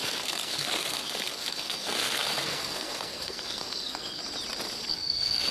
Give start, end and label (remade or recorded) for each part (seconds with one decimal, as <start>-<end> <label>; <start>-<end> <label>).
0.0-4.2 remade; 4.2-4.9 recorded; 4.9-5.5 remade